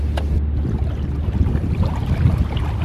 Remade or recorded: recorded